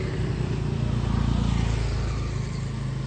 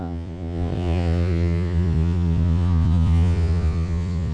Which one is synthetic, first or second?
second